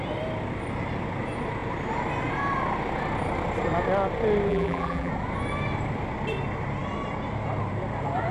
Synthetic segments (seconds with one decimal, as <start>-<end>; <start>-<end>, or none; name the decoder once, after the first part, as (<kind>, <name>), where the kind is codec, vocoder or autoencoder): 4.5-5.1 (vocoder, BigVGAN v2)